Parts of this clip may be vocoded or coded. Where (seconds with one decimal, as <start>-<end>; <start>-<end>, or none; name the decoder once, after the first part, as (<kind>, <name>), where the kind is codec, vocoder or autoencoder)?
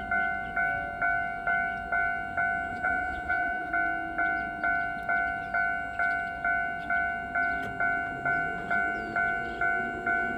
2.7-3.7 (vocoder, Vocos)